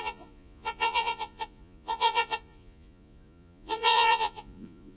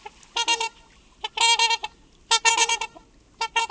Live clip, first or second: second